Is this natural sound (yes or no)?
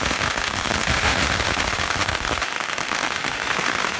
no